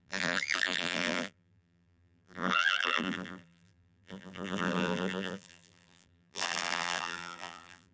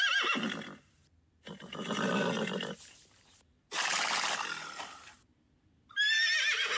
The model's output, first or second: first